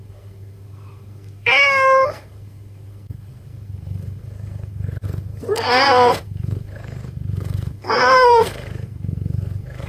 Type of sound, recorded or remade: remade